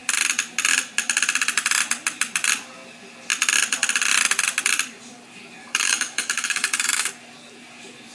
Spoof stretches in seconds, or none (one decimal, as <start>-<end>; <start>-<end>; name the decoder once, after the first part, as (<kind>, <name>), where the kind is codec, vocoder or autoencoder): 5.6-7.1 (codec, DAC)